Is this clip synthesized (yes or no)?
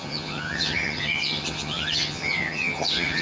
yes